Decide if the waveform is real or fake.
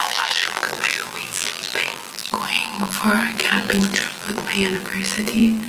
fake